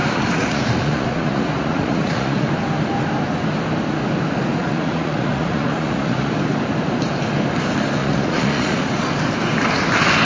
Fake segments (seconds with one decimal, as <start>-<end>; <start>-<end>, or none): 0.0-2.5; 4.6-6.3; 8.0-8.9